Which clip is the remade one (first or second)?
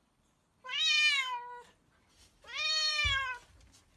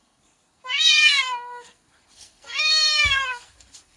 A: second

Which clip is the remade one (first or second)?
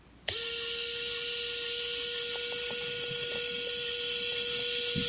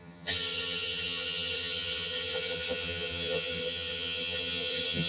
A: second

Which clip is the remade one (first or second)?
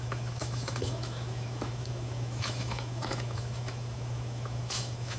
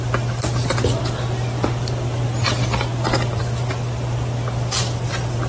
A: first